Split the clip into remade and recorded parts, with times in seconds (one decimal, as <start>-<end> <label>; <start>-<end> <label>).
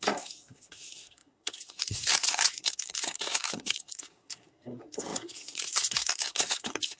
0.0-7.0 remade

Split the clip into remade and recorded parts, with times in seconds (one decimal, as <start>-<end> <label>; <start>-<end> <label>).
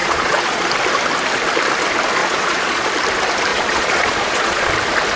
0.0-0.7 remade; 0.7-2.2 recorded; 2.2-2.9 remade; 2.9-3.5 recorded; 3.5-4.7 remade; 4.7-5.2 recorded